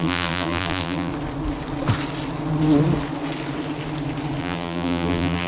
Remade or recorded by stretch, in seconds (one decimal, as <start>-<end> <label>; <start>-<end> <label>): 0.0-1.1 remade; 1.1-4.4 recorded; 4.4-5.5 remade